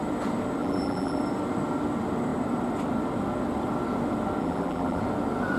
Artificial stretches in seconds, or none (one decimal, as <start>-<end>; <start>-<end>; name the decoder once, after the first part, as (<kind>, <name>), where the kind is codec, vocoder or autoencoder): 0.6-1.2 (vocoder, BigVGAN v2); 4.4-5.0